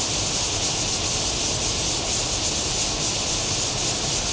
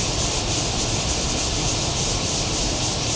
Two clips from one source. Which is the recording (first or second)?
first